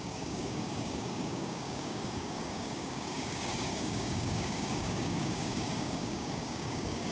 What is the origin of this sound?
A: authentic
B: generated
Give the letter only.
B